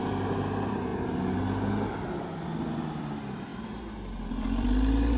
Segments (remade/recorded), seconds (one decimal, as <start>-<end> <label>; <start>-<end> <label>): 0.0-0.9 remade; 0.9-2.1 recorded; 2.1-3.5 remade; 3.5-4.3 recorded; 4.3-5.2 remade